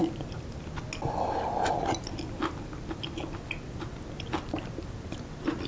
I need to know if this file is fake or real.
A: real